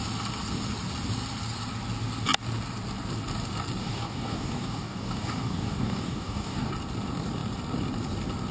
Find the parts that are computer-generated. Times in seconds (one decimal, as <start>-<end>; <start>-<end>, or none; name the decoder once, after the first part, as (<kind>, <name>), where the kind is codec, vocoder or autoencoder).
3.8-6.7 (codec, DAC)